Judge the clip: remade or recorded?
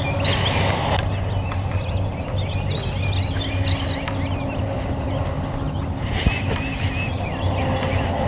recorded